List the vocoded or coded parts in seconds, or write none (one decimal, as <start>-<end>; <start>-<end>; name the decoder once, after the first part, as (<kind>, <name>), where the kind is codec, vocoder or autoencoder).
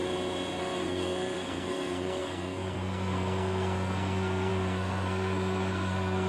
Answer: 0.6-6.3 (codec, SNAC)